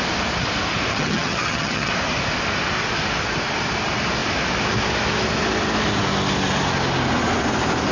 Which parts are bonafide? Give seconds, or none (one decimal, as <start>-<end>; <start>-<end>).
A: 0.0-0.9; 1.9-7.9